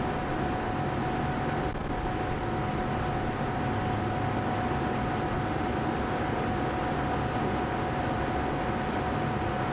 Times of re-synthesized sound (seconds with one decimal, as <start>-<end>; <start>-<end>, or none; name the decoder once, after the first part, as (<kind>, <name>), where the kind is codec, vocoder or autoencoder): none